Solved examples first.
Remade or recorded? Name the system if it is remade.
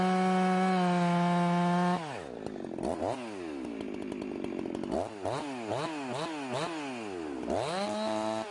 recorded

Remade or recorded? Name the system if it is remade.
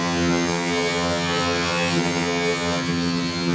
remade, vocoder, HiFi-GAN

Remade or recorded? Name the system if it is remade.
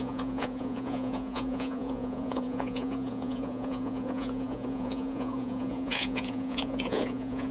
remade, vocoder, Vocos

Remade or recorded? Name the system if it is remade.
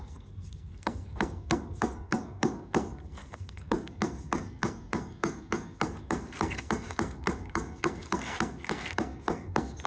remade, codec, SNAC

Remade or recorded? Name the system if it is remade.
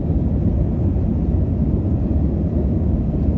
recorded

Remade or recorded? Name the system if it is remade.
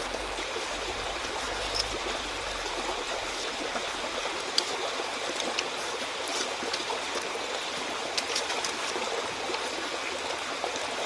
recorded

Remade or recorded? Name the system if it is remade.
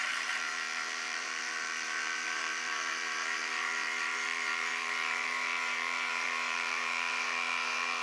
remade, vocoder, BigVGAN v2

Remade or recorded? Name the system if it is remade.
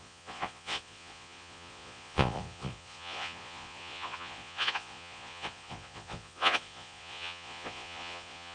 remade, vocoder, Vocos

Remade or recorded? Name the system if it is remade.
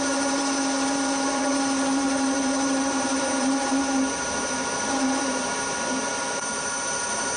remade, vocoder, BigVGAN v2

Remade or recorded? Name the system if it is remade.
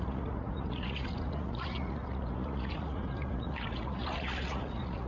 remade, vocoder, Vocos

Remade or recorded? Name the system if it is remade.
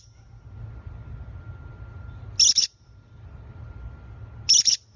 recorded